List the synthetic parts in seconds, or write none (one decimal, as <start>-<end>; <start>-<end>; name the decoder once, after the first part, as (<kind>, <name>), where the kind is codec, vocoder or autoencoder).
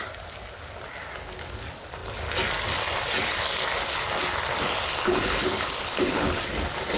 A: 4.9-6.4 (codec, HILCodec)